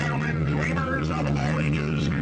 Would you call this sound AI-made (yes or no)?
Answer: yes